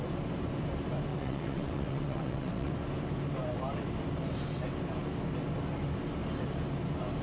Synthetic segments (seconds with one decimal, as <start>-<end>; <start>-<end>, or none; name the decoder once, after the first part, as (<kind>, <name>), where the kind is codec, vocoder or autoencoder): 1.1-2.7 (vocoder, WaveNeXt)